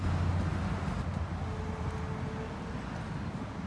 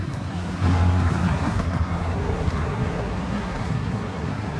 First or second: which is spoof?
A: second